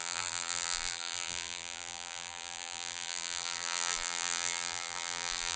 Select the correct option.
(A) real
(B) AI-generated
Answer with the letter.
B